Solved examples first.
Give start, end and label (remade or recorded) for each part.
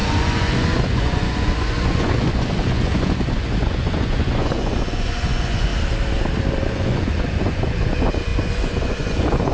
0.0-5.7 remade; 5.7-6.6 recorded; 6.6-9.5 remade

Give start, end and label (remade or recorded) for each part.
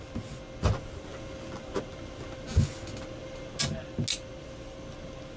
0.0-5.4 recorded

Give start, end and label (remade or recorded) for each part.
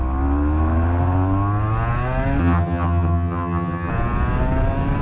0.0-2.4 recorded; 2.4-3.9 remade; 3.9-5.0 recorded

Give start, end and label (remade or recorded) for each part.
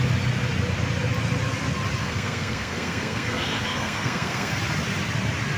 0.0-2.0 recorded; 2.0-4.5 remade; 4.5-5.6 recorded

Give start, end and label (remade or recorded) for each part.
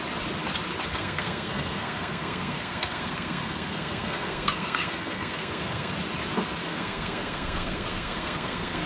0.0-0.9 recorded; 0.9-5.9 remade; 5.9-6.6 recorded; 6.6-8.9 remade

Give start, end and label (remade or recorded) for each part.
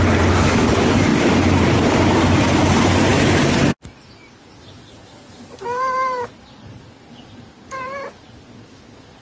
0.0-9.2 recorded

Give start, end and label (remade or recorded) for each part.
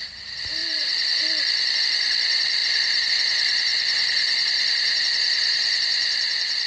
0.0-0.6 recorded; 0.6-1.8 remade; 1.8-6.7 recorded